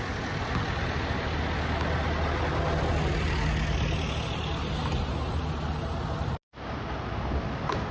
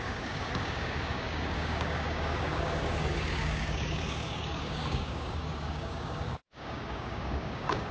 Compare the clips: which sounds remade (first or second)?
second